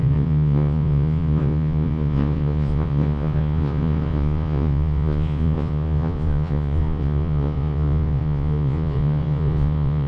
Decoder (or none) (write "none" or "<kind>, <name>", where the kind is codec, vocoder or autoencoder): vocoder, Vocos